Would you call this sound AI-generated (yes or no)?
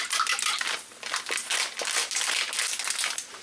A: no